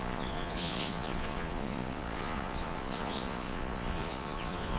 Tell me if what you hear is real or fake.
fake